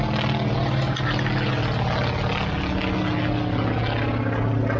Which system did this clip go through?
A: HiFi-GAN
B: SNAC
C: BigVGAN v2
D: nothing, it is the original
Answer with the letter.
D